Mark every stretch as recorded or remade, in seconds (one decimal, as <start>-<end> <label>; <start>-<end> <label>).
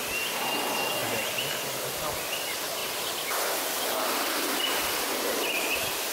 0.0-6.1 recorded